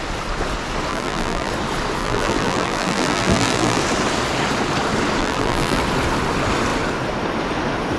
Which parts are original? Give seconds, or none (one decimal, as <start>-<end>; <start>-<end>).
0.0-0.9; 1.5-2.0; 3.8-5.2; 5.8-8.0